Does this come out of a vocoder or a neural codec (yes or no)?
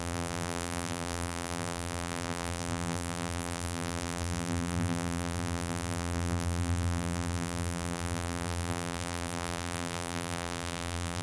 yes